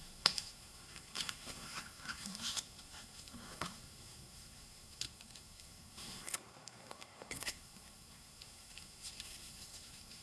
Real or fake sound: fake